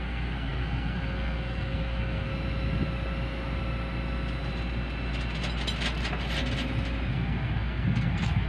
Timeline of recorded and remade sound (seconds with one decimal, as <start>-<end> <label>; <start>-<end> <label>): 0.0-2.3 remade; 2.3-7.1 recorded; 7.1-8.5 remade